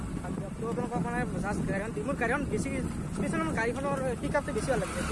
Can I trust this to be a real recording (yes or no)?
yes